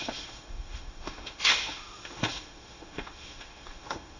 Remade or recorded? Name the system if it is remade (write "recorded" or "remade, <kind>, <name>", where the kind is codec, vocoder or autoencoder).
remade, autoencoder, DAC-VAE